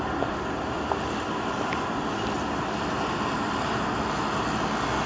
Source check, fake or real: real